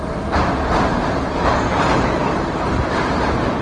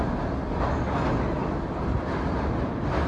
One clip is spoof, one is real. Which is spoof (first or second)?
first